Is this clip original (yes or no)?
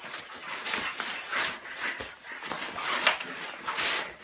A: yes